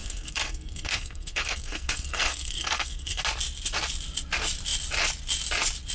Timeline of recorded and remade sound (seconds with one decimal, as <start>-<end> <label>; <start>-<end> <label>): 0.0-3.2 remade; 3.2-5.9 recorded